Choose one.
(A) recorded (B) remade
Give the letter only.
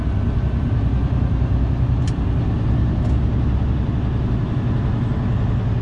A